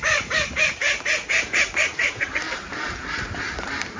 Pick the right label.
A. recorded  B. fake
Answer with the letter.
B